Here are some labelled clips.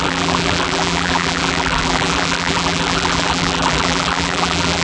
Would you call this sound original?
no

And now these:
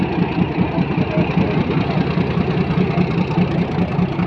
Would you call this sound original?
yes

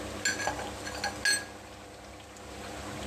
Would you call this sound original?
yes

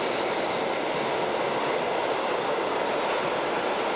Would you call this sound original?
yes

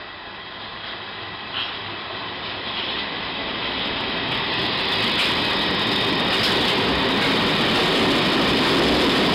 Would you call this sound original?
yes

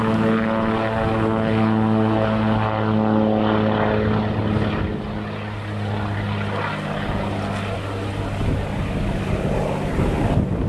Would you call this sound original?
yes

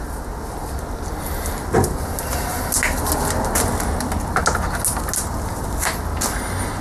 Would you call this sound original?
yes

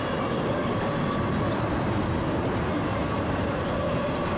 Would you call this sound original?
yes